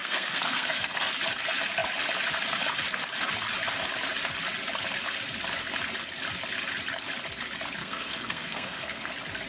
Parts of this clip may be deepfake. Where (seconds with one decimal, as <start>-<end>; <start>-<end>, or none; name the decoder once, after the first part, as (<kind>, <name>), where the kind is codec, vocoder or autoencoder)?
0.0-1.1 (codec, SNAC); 7.8-9.1